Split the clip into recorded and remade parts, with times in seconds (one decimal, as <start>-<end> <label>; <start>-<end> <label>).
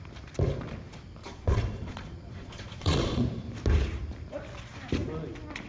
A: 0.0-1.2 recorded; 1.2-3.2 remade; 3.2-5.7 recorded